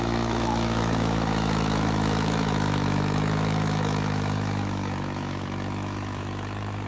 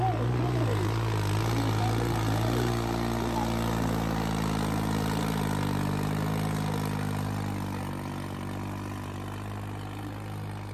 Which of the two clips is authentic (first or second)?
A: second